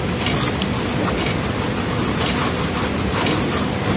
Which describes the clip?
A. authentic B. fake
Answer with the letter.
A